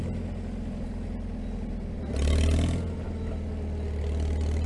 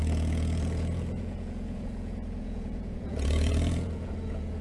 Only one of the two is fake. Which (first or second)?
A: second